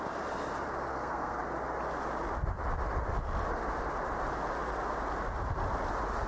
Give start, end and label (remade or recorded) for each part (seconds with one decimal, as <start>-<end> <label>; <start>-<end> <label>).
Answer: 0.0-0.9 recorded; 0.9-1.4 remade; 1.4-6.3 recorded